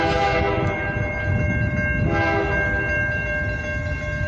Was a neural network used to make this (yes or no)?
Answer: no